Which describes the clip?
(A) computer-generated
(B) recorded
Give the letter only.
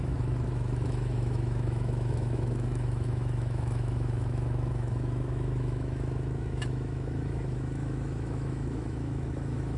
A